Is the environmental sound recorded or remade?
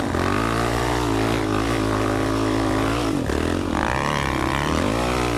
recorded